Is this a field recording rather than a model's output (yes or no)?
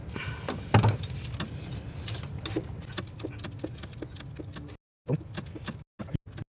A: yes